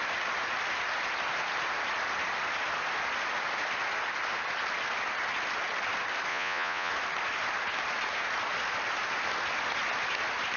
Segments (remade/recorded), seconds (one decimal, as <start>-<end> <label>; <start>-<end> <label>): 0.0-6.3 recorded; 6.3-6.9 remade; 6.9-10.6 recorded